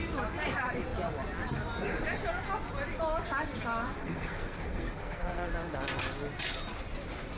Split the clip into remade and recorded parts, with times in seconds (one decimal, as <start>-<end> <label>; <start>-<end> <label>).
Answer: 0.0-4.0 recorded; 4.0-5.5 remade; 5.5-7.4 recorded